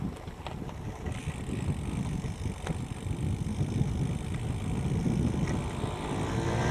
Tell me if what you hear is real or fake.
real